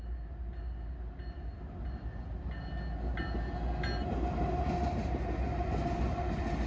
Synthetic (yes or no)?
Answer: no